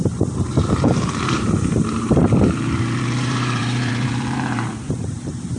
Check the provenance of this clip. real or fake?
fake